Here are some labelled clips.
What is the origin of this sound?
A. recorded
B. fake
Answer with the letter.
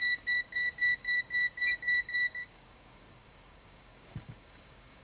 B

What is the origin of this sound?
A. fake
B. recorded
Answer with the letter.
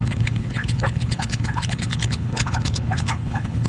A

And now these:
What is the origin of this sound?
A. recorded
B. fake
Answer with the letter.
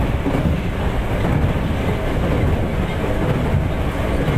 A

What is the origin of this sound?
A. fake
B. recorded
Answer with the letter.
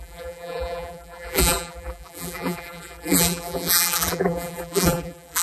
A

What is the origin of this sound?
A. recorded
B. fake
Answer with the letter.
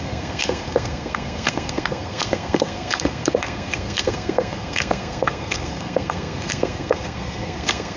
B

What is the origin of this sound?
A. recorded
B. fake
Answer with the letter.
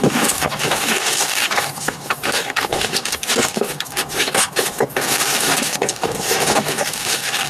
B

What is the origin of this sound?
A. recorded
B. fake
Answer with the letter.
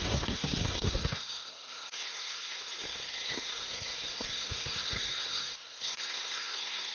B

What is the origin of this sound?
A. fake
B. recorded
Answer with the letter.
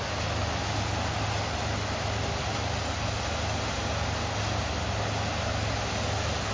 B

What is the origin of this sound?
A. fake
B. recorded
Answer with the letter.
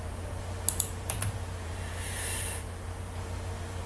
A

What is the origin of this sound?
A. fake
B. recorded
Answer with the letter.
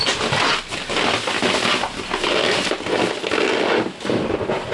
B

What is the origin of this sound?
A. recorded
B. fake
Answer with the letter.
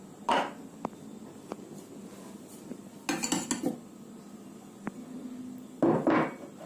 A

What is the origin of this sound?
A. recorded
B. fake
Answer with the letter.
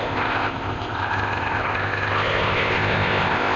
B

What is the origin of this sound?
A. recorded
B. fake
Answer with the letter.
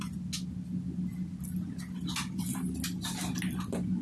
A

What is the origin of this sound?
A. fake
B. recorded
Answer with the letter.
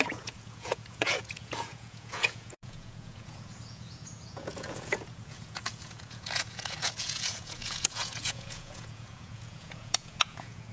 A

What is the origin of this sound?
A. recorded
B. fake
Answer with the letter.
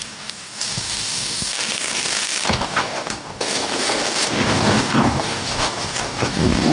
B